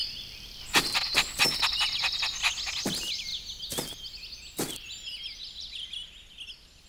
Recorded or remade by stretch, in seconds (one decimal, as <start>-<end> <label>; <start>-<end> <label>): 0.0-6.9 recorded